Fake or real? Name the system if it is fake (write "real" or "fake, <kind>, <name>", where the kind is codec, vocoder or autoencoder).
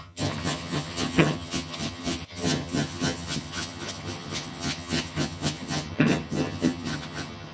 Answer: fake, vocoder, HiFi-GAN